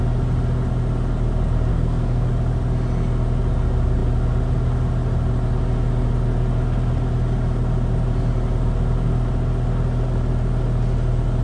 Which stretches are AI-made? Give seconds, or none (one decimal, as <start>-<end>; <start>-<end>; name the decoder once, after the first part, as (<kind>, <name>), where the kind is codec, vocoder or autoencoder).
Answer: 1.7-2.3 (codec, SNAC)